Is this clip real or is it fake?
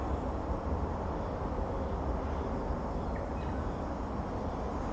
real